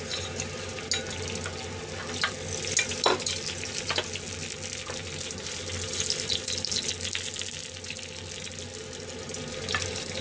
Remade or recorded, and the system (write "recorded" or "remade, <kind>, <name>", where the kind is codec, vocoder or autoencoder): recorded